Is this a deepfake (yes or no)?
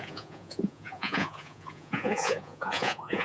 yes